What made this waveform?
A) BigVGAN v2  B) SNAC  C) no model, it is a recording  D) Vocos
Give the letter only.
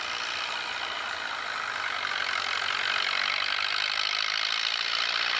A